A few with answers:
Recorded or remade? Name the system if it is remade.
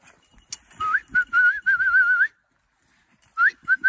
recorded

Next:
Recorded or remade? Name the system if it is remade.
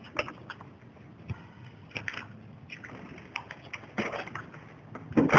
recorded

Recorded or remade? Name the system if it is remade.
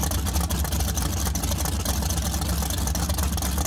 recorded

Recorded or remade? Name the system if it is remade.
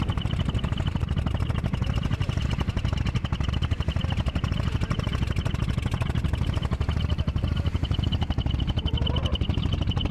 recorded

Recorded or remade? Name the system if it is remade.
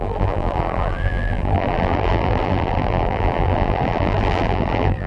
remade, vocoder, BigVGAN v2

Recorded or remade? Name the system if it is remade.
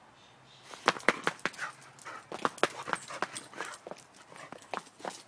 recorded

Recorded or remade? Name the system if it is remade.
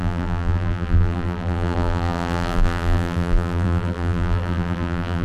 remade, vocoder, BigVGAN v2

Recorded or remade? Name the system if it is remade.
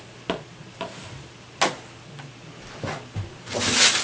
recorded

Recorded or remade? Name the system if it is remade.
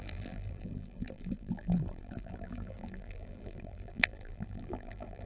remade, vocoder, BigVGAN v2